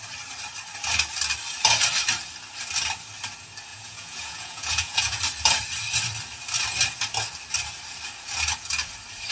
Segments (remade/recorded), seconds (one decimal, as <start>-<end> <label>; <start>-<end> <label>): 0.0-3.7 recorded; 3.7-5.2 remade; 5.2-9.3 recorded